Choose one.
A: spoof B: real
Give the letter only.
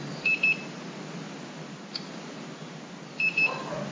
B